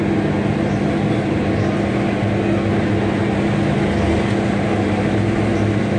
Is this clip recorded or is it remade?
recorded